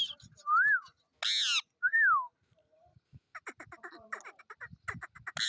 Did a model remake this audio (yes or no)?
no